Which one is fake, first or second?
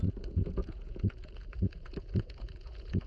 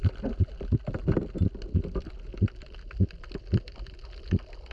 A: first